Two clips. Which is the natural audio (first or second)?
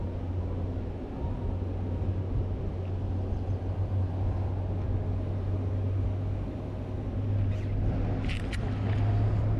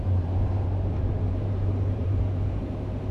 first